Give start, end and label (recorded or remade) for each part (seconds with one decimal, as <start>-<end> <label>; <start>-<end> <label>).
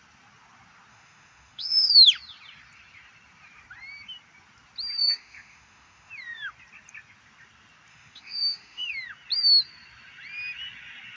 0.0-0.9 recorded; 0.9-1.9 remade; 1.9-5.0 recorded; 5.0-6.1 remade; 6.1-7.9 recorded; 7.9-8.9 remade; 8.9-11.2 recorded